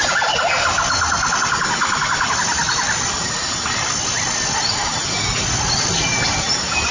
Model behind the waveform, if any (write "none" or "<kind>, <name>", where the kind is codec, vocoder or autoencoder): none